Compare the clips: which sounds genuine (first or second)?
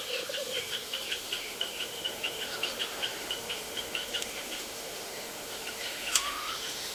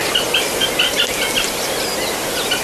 second